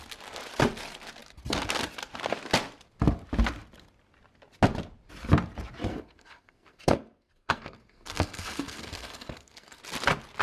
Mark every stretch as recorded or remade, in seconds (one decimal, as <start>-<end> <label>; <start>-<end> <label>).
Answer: 0.0-5.9 recorded; 5.9-9.8 remade; 9.8-10.4 recorded